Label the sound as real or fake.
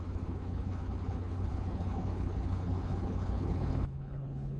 fake